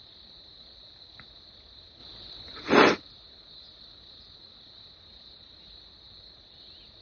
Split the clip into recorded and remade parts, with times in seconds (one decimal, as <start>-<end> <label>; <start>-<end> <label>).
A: 0.0-7.0 recorded